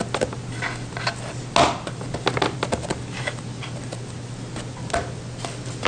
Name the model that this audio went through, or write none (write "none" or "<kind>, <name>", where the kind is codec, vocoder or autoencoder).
none